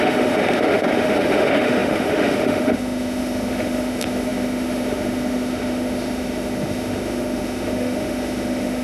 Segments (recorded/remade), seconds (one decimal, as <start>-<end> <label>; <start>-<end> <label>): 0.0-8.8 remade